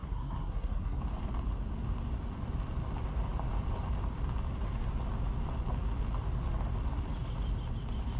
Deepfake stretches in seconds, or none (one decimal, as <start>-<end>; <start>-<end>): 0.0-1.0